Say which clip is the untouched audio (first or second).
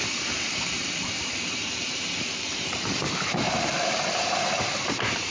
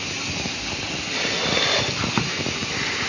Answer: second